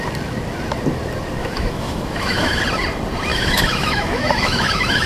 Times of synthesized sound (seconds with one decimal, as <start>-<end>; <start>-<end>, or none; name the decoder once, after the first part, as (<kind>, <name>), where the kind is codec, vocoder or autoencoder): 1.4-2.6 (autoencoder, DAC-VAE); 3.3-5.1